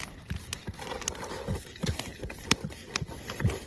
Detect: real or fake real